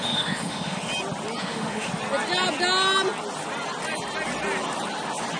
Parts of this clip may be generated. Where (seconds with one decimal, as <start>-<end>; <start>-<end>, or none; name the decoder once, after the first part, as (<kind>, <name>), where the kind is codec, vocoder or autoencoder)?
0.0-0.9 (autoencoder, DAC-VAE); 1.4-1.9